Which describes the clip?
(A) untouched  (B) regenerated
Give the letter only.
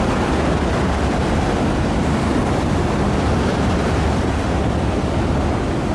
A